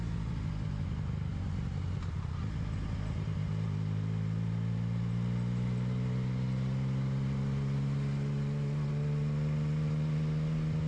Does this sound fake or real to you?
real